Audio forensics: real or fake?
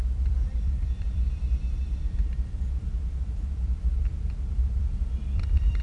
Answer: fake